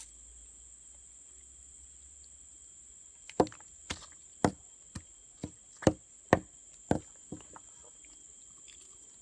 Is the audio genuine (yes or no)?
yes